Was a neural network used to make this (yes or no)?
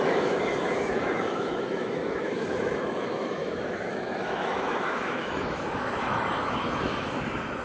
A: yes